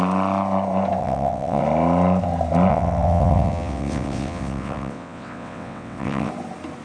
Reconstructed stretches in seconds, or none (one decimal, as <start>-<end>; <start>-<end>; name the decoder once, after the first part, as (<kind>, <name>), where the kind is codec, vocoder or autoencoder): 1.0-1.6 (vocoder, WaveNeXt); 2.7-6.3

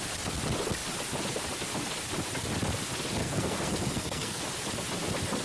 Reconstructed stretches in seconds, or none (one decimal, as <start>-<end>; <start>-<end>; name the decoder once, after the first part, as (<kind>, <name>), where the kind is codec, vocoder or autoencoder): 3.2-4.4 (codec, SNAC)

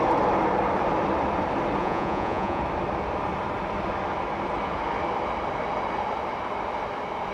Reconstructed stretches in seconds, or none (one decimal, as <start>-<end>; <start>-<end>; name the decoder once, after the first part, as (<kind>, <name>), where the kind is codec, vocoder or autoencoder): 1.8-2.6 (vocoder, Vocos)

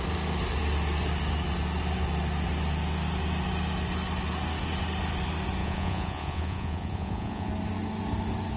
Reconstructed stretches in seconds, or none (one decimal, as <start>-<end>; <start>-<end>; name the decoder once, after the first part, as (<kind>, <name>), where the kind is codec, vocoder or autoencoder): 5.6-7.5 (vocoder, Vocos)

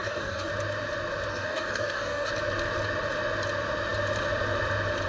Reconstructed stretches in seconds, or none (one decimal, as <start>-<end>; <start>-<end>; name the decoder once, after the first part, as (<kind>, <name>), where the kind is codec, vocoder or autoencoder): 0.0-0.5 (codec, DAC); 1.3-2.3